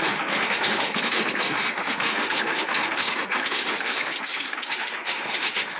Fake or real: fake